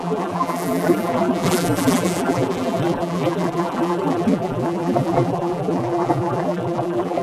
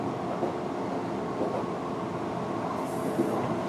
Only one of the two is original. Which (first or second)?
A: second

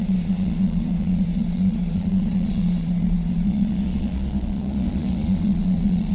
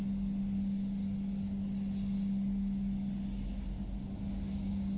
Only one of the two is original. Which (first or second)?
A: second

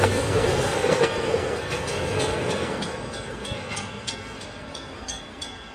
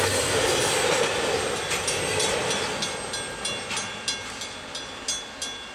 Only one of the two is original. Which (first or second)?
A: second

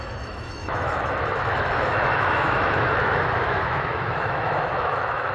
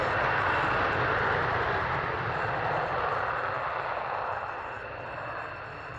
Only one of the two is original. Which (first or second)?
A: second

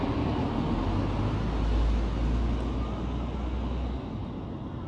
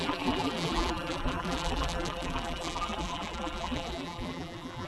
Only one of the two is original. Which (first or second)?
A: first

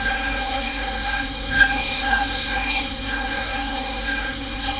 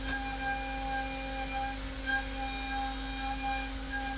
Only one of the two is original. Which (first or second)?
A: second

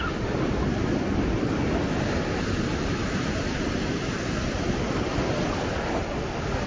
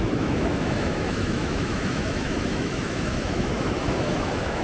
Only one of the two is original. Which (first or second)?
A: first